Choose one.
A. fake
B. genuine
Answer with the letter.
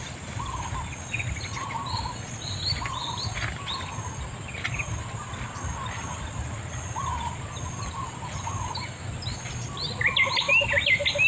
B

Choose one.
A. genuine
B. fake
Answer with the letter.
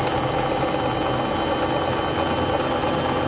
A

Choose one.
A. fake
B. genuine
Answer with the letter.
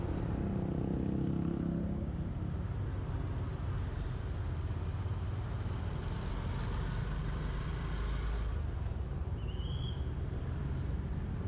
B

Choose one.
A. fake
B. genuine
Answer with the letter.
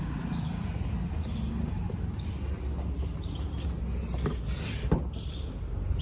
B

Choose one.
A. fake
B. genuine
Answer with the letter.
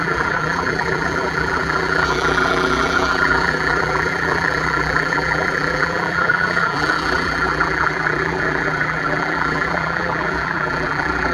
A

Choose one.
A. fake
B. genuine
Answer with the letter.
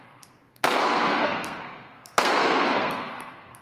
A